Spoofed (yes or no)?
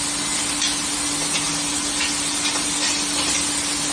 no